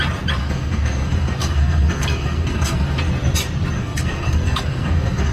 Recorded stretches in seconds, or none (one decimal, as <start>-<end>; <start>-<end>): 0.0-0.4; 3.0-3.8